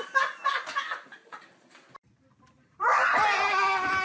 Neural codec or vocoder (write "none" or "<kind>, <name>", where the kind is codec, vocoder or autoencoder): none